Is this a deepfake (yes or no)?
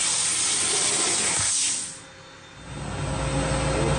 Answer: no